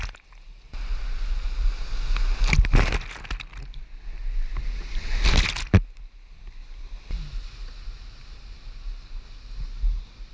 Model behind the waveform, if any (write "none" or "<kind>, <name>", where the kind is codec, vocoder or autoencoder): none